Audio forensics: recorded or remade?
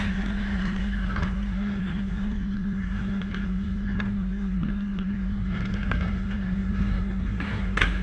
remade